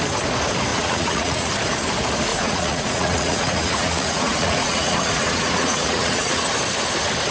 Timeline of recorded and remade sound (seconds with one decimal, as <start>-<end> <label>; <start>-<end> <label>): 0.0-0.7 recorded; 0.7-1.5 remade; 1.5-2.3 recorded; 2.3-6.4 remade; 6.4-7.3 recorded